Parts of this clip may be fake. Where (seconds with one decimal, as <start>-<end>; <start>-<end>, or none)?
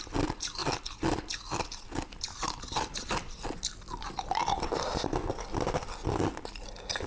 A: none